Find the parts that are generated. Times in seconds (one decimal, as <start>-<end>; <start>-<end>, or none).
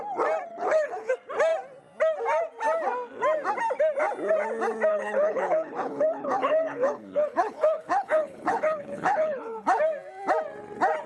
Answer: 0.5-1.1; 4.9-9.8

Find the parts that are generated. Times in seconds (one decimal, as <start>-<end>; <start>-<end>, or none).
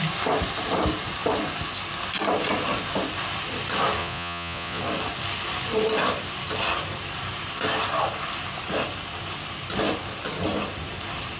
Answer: 4.0-4.8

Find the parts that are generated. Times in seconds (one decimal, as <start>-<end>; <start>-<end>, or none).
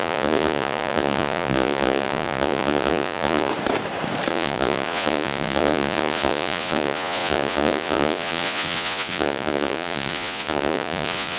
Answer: 0.0-3.5; 4.3-11.4